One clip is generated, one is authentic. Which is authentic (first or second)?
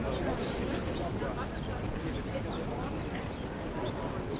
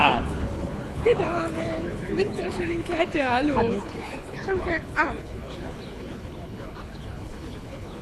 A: first